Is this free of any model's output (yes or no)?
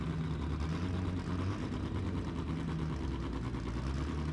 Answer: yes